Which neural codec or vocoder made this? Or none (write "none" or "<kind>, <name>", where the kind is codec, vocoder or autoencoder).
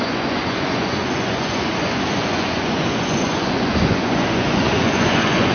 vocoder, Vocos